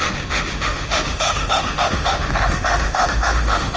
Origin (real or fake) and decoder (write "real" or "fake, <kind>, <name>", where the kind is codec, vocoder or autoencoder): fake, autoencoder, DAC-VAE